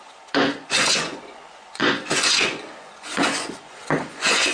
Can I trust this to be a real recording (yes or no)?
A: no